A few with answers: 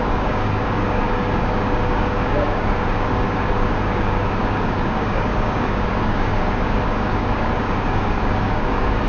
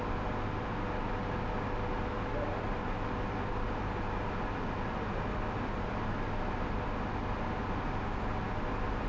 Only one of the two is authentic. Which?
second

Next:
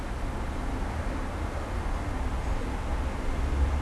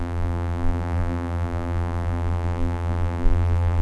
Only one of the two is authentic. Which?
first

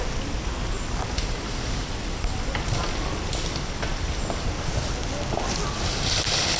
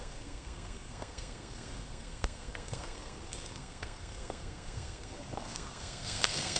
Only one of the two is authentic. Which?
first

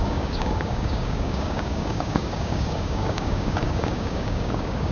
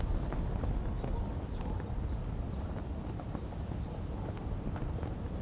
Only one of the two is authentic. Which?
second